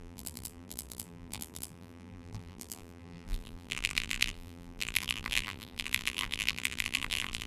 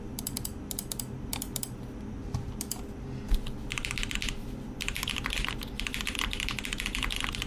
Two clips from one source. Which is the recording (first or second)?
second